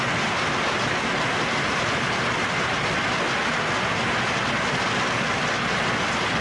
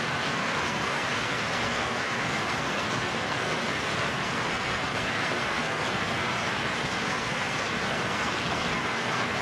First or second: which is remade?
second